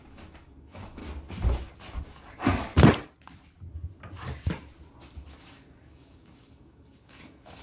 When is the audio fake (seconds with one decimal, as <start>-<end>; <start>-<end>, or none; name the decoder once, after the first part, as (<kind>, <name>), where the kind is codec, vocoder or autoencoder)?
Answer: 0.0-1.0 (codec, DAC); 2.0-2.7; 5.4-7.6